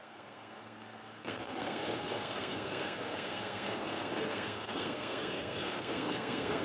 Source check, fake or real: fake